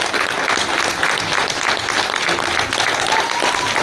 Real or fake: real